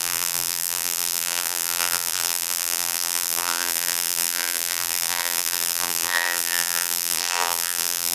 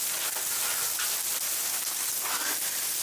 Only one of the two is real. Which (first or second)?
second